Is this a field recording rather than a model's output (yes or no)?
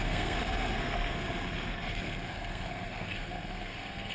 no